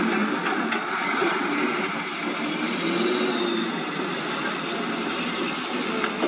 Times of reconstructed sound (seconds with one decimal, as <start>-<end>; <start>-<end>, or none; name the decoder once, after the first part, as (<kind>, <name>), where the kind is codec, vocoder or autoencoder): none